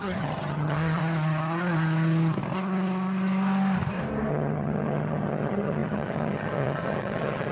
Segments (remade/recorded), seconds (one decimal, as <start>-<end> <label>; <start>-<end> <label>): 0.0-1.0 remade; 1.0-4.3 recorded; 4.3-7.5 remade